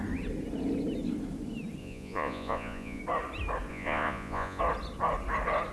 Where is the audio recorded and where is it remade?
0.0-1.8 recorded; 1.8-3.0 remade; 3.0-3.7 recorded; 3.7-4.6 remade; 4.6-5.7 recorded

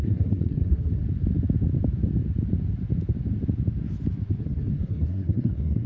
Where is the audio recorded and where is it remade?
0.0-1.0 remade; 1.0-4.4 recorded; 4.4-5.9 remade

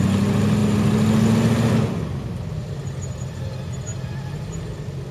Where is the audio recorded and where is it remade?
0.0-5.1 recorded

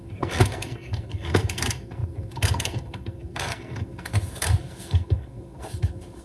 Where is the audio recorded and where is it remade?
0.0-6.2 remade

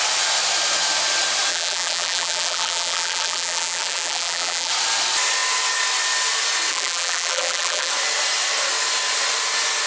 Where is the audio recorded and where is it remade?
0.0-1.5 recorded; 1.5-4.7 remade; 4.7-6.7 recorded; 6.7-7.9 remade; 7.9-9.9 recorded